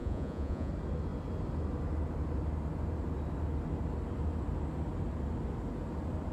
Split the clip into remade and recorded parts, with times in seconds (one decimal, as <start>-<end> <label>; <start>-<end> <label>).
0.0-0.7 remade; 0.7-6.3 recorded